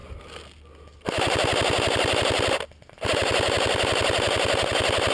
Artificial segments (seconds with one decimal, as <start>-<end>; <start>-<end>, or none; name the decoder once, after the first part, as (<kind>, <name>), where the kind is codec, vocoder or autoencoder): none